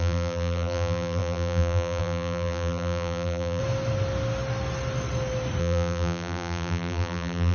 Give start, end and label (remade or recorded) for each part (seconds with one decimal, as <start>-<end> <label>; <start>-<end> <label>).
0.0-3.6 remade; 3.6-5.6 recorded; 5.6-7.5 remade